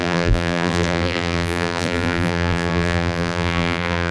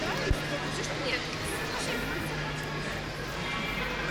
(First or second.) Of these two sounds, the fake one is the first